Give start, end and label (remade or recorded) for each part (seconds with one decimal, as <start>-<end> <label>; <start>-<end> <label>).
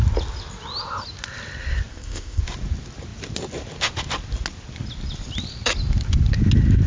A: 0.0-1.9 recorded; 1.9-2.4 remade; 2.4-6.9 recorded